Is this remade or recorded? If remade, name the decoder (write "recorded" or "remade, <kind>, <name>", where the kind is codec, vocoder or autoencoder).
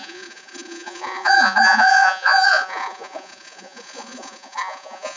remade, vocoder, Vocos